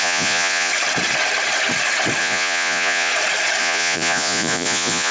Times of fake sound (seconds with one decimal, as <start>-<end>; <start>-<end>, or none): 0.0-0.7; 2.2-3.1; 3.6-5.1